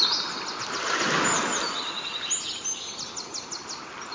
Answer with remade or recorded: recorded